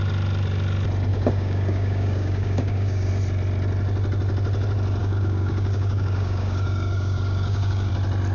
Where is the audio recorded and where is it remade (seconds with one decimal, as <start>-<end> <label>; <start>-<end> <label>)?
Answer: 0.0-1.1 recorded; 1.1-3.1 remade; 3.1-5.0 recorded; 5.0-7.9 remade; 7.9-8.3 recorded